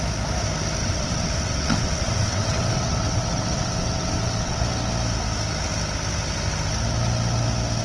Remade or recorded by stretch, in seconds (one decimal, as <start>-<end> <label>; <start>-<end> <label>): 0.0-0.8 recorded; 0.8-4.6 remade; 4.6-7.8 recorded